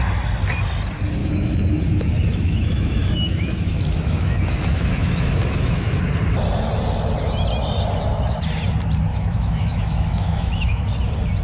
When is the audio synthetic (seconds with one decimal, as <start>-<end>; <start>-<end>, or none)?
1.2-6.0; 9.1-10.8